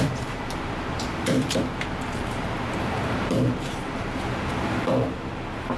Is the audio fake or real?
fake